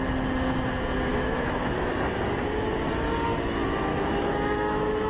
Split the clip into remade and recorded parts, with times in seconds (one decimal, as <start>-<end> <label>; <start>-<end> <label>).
0.0-1.1 recorded; 1.1-1.9 remade; 1.9-3.9 recorded; 3.9-5.1 remade